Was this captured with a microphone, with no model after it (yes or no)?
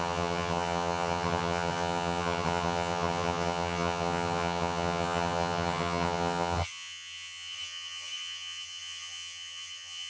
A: no